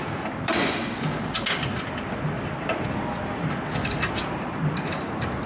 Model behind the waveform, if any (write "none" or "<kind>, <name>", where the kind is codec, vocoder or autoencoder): none